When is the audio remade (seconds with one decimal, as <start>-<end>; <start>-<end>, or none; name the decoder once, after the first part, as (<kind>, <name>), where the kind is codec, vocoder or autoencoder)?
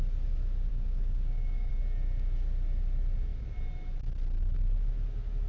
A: 0.7-1.7 (codec, DAC)